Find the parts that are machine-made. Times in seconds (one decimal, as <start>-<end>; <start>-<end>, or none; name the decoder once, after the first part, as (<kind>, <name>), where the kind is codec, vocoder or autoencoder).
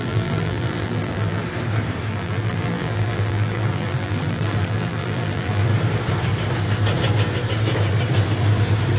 0.0-1.4 (vocoder, BigVGAN v2); 2.1-5.6